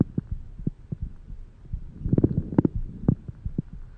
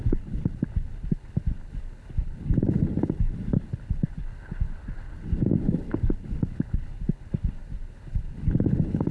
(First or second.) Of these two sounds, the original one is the first